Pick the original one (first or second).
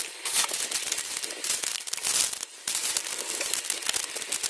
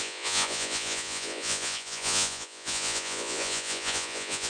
first